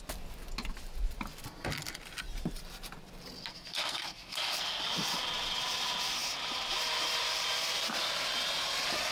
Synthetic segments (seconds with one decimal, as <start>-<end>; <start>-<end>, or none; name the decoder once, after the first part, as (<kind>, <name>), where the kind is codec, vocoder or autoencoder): 3.5-4.8 (codec, SNAC)